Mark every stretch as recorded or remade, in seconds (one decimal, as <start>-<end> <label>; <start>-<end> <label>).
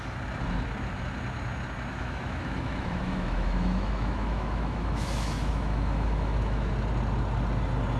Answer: 0.0-1.9 recorded; 1.9-6.7 remade; 6.7-8.0 recorded